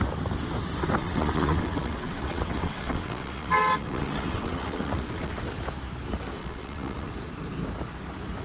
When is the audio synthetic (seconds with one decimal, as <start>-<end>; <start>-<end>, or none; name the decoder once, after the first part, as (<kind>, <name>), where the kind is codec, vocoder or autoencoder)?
1.0-5.4 (vocoder, WaveNeXt); 6.4-7.1